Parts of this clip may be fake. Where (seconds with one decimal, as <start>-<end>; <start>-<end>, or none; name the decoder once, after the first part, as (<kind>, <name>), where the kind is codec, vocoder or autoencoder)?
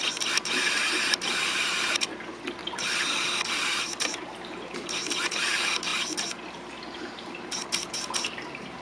0.0-2.1 (vocoder, BigVGAN v2); 2.6-5.9; 6.5-8.8